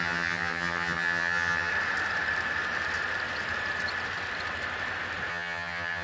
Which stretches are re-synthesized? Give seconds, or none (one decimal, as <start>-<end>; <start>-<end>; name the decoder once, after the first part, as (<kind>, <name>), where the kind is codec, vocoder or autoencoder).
0.0-1.7 (vocoder, HiFi-GAN); 5.3-6.0